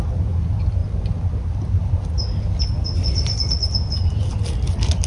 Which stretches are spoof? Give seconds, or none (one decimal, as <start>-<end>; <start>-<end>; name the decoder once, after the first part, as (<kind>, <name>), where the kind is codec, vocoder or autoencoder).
none